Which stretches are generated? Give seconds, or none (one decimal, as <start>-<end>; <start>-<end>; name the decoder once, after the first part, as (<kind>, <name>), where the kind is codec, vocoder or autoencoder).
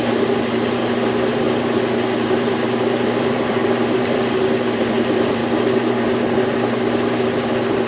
0.0-0.8 (vocoder, BigVGAN v2); 3.2-5.4; 7.5-7.9